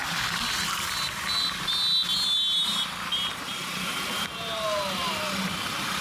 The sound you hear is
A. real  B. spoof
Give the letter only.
A